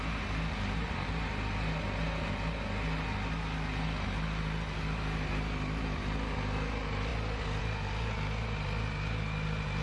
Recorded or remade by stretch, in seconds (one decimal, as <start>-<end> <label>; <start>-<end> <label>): 0.0-9.8 recorded